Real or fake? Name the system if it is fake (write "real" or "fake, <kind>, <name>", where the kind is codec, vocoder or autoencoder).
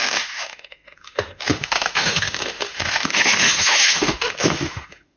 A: fake, autoencoder, DAC-VAE